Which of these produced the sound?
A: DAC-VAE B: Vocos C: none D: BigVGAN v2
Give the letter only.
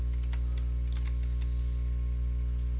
C